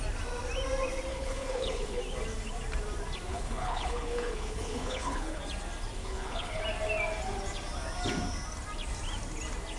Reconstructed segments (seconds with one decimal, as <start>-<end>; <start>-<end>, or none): 1.1-2.0; 3.3-5.4; 6.0-6.6